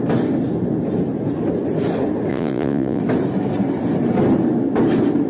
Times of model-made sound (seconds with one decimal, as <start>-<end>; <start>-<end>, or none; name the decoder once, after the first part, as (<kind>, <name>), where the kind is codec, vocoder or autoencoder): 2.3-3.0 (vocoder, Vocos)

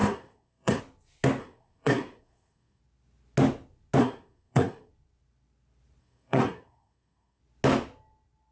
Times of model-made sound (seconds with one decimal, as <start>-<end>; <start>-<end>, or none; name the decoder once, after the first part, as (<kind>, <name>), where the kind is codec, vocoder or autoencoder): 0.0-0.8 (codec, SNAC); 1.4-2.8; 4.0-4.9; 6.0-7.4

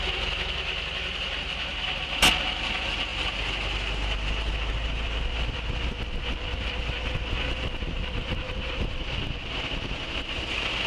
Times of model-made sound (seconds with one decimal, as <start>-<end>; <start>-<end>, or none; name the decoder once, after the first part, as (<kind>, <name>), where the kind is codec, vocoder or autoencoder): none

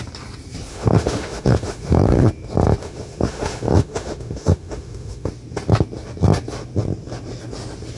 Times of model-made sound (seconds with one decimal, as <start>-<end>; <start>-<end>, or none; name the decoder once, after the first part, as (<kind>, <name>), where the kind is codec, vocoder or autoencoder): 0.7-2.3 (autoencoder, DAC-VAE); 2.8-5.3

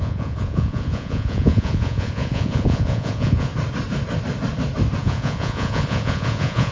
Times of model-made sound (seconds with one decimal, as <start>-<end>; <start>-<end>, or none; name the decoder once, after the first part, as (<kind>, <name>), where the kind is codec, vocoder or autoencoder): 0.0-3.5 (vocoder, Vocos); 5.0-6.7

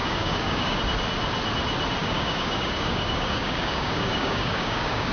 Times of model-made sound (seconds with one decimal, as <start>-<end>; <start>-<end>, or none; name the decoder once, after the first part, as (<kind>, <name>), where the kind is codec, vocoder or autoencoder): 0.0-0.8 (codec, DAC); 2.0-5.1